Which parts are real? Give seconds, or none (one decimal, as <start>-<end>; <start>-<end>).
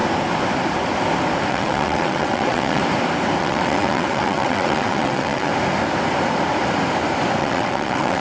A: 0.0-1.5; 2.8-3.4; 5.5-7.4